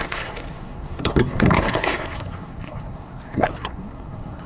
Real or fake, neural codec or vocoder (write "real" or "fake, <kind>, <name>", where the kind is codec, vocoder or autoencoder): fake, codec, SNAC